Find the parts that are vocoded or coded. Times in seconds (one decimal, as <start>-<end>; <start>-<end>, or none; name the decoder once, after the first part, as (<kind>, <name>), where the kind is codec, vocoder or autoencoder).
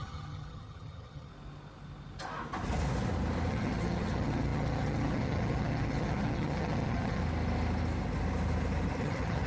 0.0-1.3 (vocoder, HiFi-GAN); 3.5-7.2; 9.0-9.5